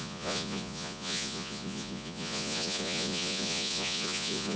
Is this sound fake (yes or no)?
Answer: yes